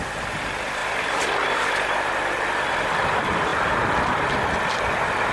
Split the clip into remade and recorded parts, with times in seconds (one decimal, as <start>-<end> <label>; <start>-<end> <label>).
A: 0.0-3.5 remade; 3.5-4.7 recorded; 4.7-5.3 remade